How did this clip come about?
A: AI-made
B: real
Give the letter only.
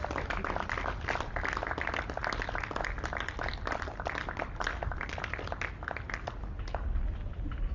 B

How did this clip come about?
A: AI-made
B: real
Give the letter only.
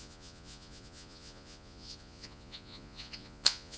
A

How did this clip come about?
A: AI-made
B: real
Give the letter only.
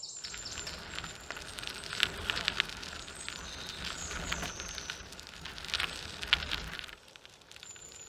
B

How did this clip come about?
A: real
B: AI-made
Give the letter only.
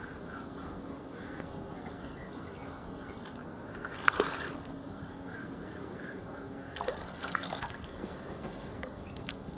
B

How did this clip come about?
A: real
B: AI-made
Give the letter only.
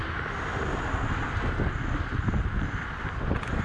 A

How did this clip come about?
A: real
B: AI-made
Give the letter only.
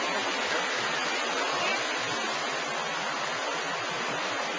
A